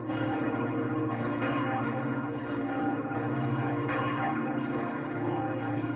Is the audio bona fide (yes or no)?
no